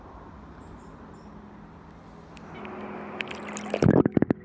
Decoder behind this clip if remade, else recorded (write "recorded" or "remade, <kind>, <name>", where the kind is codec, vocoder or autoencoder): recorded